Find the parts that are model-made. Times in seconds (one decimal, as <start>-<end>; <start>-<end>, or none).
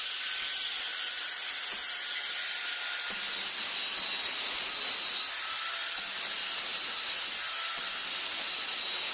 none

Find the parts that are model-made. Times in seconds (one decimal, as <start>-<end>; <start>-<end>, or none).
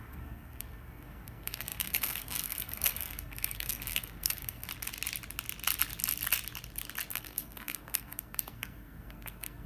0.0-4.7; 7.1-9.7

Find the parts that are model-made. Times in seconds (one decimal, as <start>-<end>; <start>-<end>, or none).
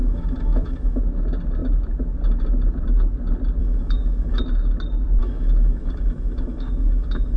0.0-1.0; 3.6-4.4; 5.2-7.4